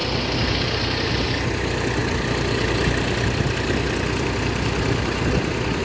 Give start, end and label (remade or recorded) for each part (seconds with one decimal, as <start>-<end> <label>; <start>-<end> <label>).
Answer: 0.0-5.8 recorded

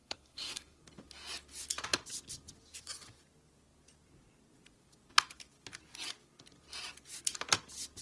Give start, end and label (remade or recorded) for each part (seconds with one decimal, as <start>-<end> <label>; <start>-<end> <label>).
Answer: 0.0-0.8 remade; 0.8-8.0 recorded

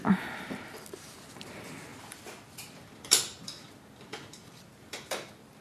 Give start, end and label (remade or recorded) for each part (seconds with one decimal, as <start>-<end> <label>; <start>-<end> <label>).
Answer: 0.0-1.9 recorded; 1.9-5.6 remade

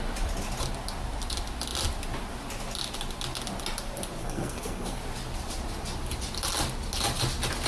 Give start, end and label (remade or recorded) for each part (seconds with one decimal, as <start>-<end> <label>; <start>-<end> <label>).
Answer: 0.0-4.2 recorded; 4.2-5.0 remade; 5.0-7.7 recorded